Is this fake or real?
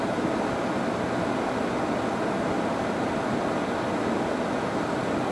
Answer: real